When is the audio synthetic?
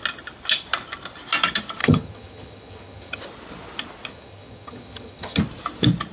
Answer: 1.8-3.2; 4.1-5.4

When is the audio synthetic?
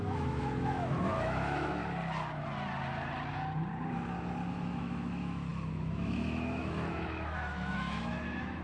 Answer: 0.0-1.8; 4.5-8.6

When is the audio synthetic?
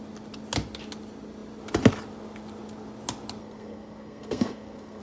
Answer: 3.4-5.0